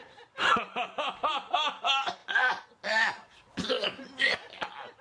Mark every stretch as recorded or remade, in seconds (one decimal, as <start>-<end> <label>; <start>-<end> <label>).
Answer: 0.0-5.0 recorded